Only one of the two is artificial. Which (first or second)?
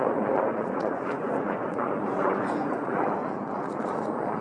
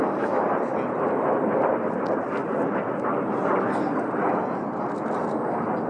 first